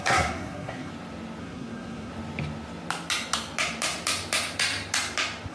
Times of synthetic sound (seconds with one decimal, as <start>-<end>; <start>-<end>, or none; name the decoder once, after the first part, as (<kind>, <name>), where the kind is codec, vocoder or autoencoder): 0.0-0.9 (codec, SNAC); 1.4-2.1